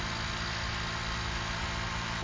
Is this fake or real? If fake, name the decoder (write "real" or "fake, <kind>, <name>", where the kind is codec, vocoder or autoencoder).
real